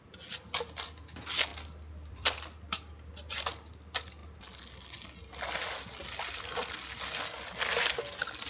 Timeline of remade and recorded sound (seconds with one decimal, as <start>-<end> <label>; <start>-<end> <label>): 0.0-1.5 recorded; 1.5-3.4 remade; 3.4-8.5 recorded